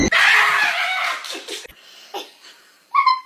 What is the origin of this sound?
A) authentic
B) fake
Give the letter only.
A